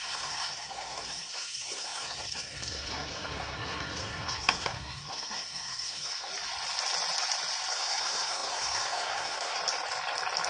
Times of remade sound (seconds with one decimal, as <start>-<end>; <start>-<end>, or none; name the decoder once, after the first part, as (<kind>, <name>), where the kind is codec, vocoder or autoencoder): 0.0-6.3 (codec, SNAC); 7.7-9.6